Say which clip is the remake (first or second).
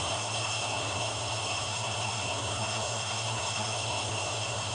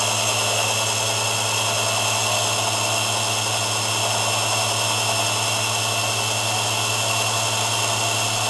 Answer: first